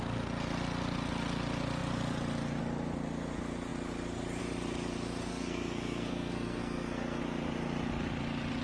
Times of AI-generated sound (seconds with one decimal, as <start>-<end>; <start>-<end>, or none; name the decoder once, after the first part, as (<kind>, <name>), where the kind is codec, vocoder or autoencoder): 5.3-7.2 (codec, SNAC)